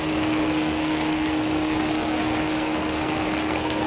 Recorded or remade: remade